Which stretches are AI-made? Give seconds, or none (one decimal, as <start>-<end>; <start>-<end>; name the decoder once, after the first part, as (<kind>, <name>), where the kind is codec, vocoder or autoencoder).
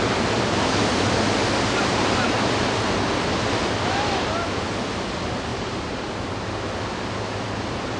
5.5-6.1 (vocoder, BigVGAN v2)